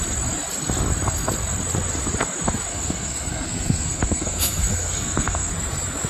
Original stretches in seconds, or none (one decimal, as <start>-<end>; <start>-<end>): 0.0-2.7; 5.5-6.1